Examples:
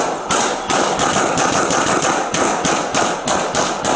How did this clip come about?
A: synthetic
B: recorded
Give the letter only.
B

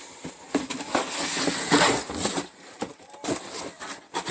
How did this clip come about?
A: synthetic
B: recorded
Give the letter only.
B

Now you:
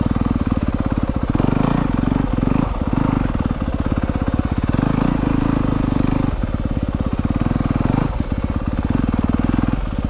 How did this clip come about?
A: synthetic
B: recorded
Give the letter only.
B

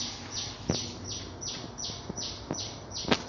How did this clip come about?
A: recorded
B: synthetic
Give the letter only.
A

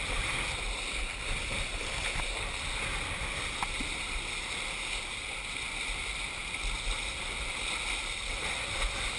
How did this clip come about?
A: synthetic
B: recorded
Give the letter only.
B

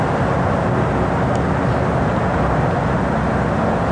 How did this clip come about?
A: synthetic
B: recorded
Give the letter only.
B